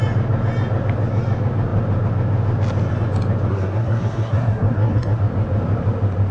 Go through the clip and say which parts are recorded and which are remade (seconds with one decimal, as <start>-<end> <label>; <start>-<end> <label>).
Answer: 0.0-3.5 recorded; 3.5-5.2 remade; 5.2-6.3 recorded